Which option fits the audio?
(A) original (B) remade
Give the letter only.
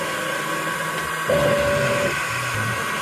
A